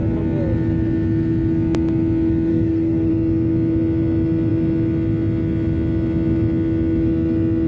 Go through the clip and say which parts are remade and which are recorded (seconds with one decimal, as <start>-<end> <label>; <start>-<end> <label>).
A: 0.0-2.5 recorded; 2.5-3.1 remade; 3.1-7.7 recorded